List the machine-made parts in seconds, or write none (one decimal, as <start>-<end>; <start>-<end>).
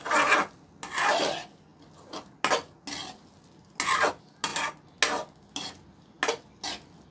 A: none